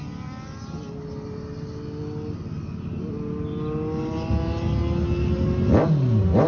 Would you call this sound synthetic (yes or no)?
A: no